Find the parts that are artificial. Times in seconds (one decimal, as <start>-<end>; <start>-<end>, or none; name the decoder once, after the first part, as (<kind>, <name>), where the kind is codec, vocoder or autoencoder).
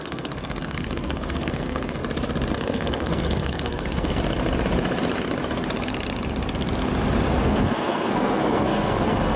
0.0-2.0 (codec, SNAC); 2.5-4.2; 7.4-9.4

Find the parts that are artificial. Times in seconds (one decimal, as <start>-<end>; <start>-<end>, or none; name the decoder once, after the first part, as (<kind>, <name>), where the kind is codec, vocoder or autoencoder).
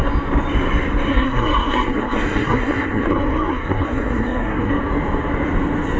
1.1-4.7 (codec, SNAC)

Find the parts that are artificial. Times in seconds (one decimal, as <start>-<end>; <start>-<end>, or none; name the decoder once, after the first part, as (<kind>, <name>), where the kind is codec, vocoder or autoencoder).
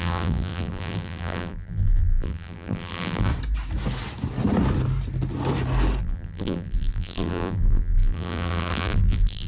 0.0-3.3 (vocoder, BigVGAN v2); 6.0-9.5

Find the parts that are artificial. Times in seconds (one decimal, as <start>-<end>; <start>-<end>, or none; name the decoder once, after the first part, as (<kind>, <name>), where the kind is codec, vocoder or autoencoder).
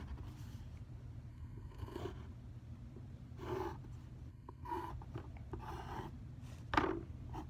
1.3-2.0 (codec, SNAC); 4.3-4.9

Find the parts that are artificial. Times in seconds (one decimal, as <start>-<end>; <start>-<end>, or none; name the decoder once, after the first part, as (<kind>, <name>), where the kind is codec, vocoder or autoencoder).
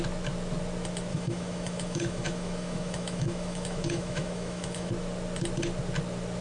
1.1-4.9 (autoencoder, DAC-VAE)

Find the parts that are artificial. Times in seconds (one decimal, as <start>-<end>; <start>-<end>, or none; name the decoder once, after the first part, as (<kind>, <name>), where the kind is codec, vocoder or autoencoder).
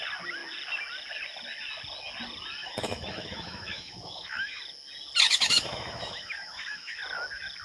2.6-4.6 (autoencoder, DAC-VAE); 5.3-7.0